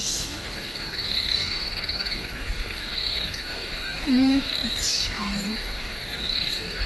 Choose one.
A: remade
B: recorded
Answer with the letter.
A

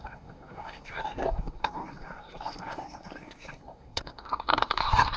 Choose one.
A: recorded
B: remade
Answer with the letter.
B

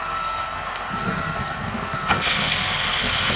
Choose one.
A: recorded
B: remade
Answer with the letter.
B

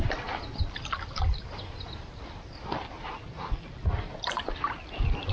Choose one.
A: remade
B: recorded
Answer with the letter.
B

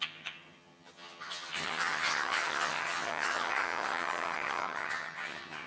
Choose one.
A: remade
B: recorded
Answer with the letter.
A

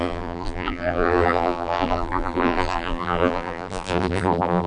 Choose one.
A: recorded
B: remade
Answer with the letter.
B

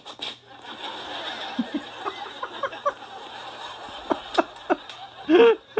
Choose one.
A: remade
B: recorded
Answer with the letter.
B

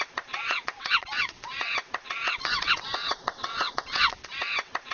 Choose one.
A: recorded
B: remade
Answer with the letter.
B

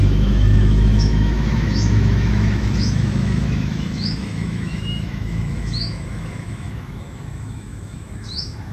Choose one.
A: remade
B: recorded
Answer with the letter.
A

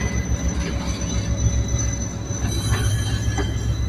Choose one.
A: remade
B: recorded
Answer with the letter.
B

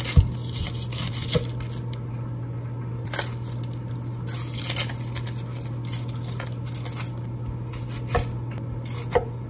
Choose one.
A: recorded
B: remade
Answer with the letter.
A